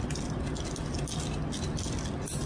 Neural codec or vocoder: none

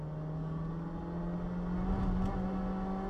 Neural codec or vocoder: none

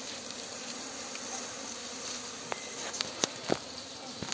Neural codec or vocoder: none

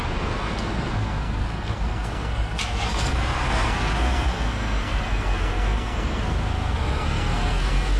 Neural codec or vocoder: codec, SNAC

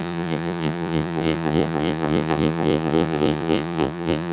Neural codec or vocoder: vocoder, Vocos